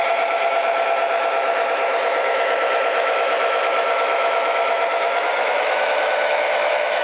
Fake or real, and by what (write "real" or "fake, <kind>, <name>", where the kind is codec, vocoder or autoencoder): fake, autoencoder, DAC-VAE